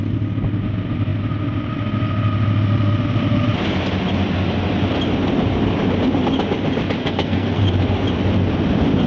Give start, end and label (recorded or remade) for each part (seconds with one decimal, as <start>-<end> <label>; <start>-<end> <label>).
0.0-7.0 recorded; 7.0-7.6 remade; 7.6-9.1 recorded